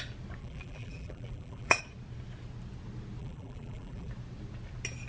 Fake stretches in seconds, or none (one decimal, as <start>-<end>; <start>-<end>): 0.4-1.8; 3.2-4.1